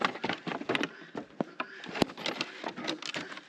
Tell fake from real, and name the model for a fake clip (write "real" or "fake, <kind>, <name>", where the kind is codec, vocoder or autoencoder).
real